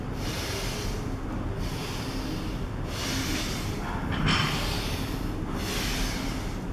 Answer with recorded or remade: recorded